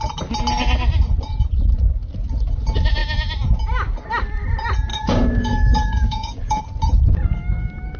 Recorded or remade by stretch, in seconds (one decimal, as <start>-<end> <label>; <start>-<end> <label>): 0.0-4.9 recorded; 4.9-6.6 remade; 6.6-8.0 recorded